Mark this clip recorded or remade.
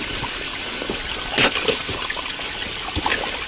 recorded